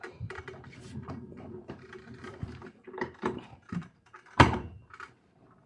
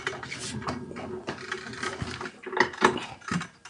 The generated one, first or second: first